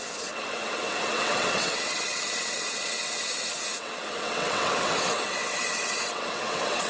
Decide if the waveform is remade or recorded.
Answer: remade